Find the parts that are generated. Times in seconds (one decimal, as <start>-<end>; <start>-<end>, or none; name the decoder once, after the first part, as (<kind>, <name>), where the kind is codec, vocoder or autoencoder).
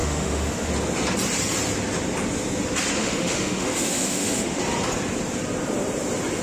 0.0-0.7 (autoencoder, DAC-VAE); 3.0-4.6